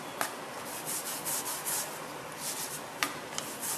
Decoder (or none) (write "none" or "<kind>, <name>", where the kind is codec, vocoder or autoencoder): none